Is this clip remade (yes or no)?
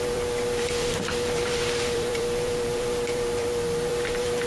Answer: yes